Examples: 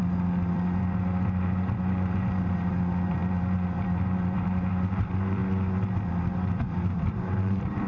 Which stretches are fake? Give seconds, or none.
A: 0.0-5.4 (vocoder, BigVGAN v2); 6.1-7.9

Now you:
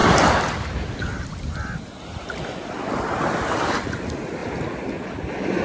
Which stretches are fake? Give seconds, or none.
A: 0.0-0.9 (vocoder, BigVGAN v2)

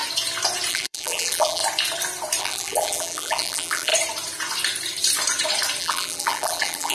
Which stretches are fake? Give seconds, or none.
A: 0.7-1.6 (vocoder, BigVGAN v2); 2.4-3.9; 5.8-6.9

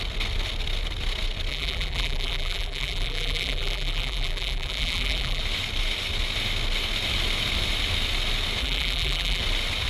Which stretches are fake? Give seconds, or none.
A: 1.5-5.4 (vocoder, BigVGAN v2); 8.6-9.4

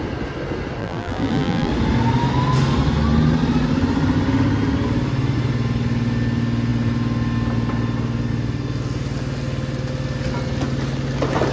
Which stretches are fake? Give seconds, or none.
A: 0.8-1.7 (vocoder, BigVGAN v2)

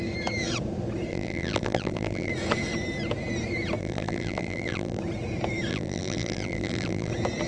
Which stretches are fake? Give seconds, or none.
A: 1.1-2.3 (vocoder, BigVGAN v2); 3.8-5.0; 5.7-7.1